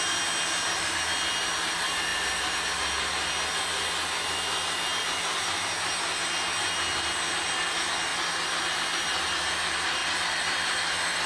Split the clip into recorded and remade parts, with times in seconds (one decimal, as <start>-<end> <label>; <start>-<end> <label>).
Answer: 0.0-11.3 recorded